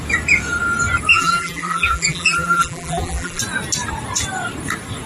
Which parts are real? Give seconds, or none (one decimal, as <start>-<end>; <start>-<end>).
0.0-1.1; 3.4-5.1